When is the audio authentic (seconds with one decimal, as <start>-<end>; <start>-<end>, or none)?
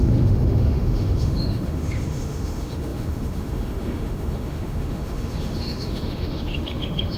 none